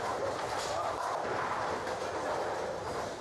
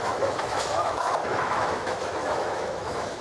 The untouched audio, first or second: first